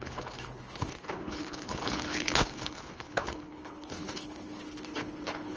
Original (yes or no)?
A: no